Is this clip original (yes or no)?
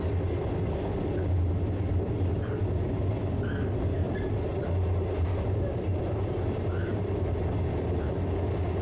yes